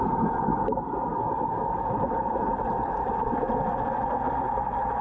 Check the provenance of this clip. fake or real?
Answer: real